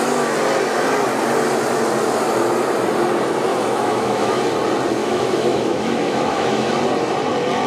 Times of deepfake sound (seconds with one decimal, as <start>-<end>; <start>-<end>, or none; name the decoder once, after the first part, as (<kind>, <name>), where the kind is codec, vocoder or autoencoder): 3.5-4.4 (autoencoder, DAC-VAE); 5.0-6.7

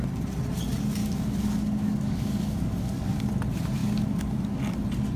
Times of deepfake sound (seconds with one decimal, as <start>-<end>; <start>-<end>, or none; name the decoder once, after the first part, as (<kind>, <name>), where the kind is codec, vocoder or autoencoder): 1.0-3.3 (codec, DAC); 3.8-4.6

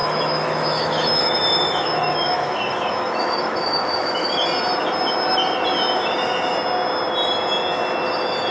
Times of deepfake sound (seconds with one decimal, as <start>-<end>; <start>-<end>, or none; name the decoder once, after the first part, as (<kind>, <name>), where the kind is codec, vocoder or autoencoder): 0.0-4.3 (autoencoder, DAC-VAE)

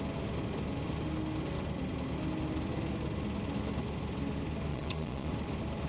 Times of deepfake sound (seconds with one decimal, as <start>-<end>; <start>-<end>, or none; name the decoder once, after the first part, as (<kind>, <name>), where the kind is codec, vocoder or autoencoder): 4.7-5.3 (vocoder, Vocos)

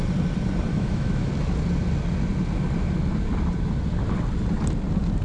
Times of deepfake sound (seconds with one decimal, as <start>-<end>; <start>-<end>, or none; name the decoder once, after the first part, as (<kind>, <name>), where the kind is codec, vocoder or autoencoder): 0.7-1.3 (autoencoder, DAC-VAE)

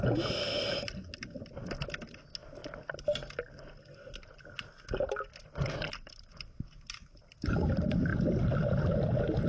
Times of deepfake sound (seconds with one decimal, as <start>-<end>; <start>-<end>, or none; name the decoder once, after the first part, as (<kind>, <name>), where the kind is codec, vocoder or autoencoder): none

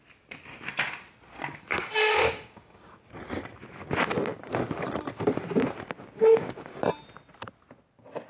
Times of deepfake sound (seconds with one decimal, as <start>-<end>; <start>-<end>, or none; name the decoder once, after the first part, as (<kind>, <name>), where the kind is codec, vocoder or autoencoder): 1.7-3.0 (codec, DAC); 6.3-6.8